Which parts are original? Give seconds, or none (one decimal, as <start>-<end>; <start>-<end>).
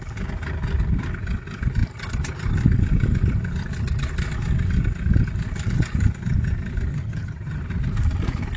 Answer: 0.0-6.9; 7.6-8.6